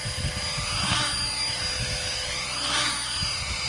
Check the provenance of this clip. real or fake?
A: real